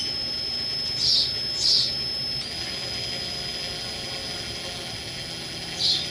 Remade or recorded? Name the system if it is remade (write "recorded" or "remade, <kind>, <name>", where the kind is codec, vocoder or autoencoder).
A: recorded